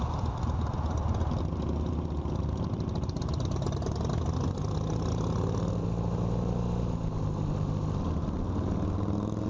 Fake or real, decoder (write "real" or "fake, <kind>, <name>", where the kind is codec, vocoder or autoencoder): real